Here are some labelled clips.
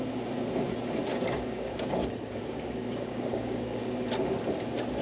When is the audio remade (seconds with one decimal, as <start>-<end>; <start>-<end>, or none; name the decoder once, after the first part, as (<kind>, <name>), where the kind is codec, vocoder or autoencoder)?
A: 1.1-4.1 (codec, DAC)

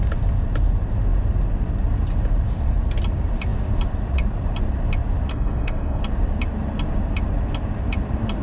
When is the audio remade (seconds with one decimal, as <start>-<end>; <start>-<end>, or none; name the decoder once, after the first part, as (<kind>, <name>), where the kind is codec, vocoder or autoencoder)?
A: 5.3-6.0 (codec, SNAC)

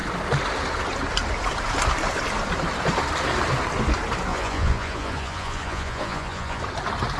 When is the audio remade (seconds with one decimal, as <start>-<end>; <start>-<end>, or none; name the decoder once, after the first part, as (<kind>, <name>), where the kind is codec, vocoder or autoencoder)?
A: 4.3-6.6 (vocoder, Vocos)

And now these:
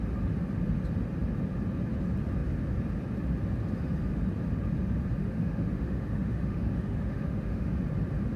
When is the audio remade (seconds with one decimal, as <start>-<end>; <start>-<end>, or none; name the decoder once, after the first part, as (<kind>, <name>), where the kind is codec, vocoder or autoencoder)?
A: 5.2-7.7 (autoencoder, DAC-VAE)

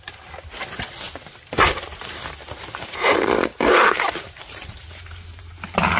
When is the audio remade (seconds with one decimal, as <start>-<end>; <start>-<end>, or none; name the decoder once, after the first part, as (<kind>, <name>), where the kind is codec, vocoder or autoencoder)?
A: 1.9-5.5 (vocoder, BigVGAN v2)

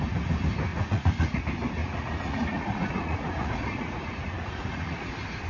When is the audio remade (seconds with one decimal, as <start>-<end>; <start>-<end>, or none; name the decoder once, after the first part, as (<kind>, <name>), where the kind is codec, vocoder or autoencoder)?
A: 0.7-1.4 (vocoder, Vocos); 1.8-5.1

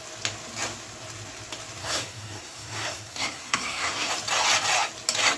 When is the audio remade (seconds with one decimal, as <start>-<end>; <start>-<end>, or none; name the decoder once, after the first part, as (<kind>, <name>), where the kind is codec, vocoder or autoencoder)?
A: 1.8-4.1 (codec, SNAC)

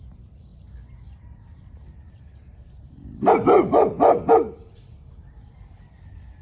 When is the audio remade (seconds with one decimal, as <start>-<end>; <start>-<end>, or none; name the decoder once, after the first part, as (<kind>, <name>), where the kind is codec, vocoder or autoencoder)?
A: 0.0-6.4 (vocoder, BigVGAN v2)